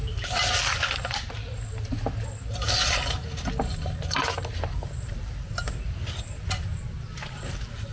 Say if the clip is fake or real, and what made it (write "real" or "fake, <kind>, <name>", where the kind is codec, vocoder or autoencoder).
real